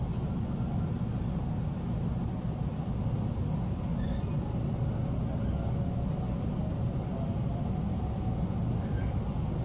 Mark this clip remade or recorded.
recorded